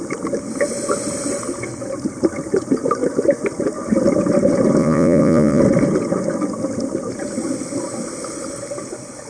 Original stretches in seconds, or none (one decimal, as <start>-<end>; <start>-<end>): 0.0-4.8; 5.6-9.3